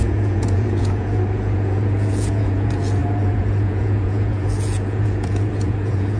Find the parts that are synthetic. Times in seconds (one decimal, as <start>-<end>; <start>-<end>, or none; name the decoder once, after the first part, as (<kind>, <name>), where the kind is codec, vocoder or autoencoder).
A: 0.0-6.2 (vocoder, Vocos)

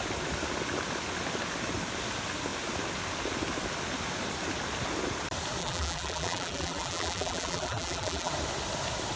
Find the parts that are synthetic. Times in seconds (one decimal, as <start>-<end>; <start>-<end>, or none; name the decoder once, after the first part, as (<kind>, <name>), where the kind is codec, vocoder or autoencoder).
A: 5.6-8.3 (vocoder, BigVGAN v2)

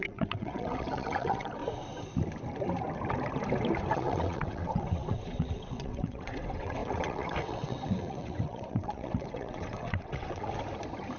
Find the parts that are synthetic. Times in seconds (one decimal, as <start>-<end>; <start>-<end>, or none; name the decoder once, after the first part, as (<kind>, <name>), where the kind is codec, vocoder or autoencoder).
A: 0.0-1.6 (vocoder, WaveNeXt); 3.9-10.5

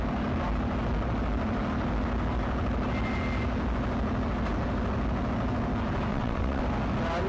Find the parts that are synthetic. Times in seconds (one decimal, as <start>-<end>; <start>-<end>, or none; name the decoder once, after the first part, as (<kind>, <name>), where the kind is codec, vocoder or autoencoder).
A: 6.1-6.6 (vocoder, WaveNeXt)